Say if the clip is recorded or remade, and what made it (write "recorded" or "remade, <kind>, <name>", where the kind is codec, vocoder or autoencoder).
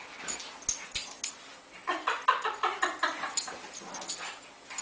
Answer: recorded